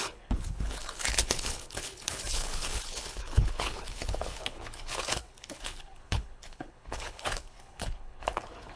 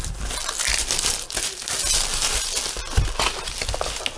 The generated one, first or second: first